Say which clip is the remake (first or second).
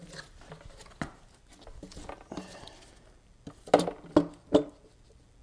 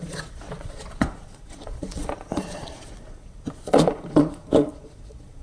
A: second